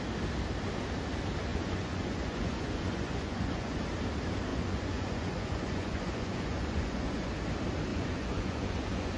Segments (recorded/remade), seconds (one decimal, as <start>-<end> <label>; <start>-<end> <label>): 0.0-1.5 recorded; 1.5-3.8 remade; 3.8-4.5 recorded; 4.5-7.3 remade; 7.3-7.9 recorded; 7.9-9.2 remade